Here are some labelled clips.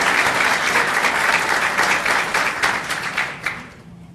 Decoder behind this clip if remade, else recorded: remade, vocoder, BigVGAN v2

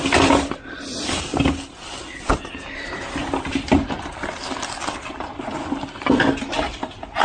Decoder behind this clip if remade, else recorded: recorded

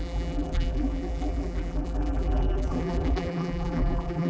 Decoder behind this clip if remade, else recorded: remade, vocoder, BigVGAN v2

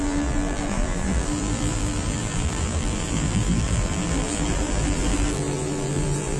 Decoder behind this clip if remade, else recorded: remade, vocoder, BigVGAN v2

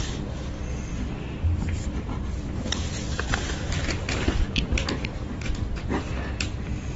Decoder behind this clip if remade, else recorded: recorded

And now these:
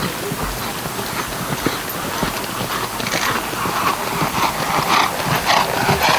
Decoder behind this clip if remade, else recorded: recorded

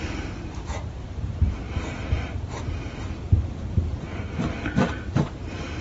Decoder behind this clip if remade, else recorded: remade, vocoder, BigVGAN v2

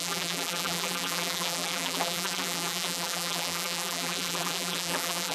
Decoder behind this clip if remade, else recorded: remade, vocoder, BigVGAN v2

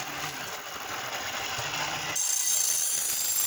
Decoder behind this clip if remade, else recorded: recorded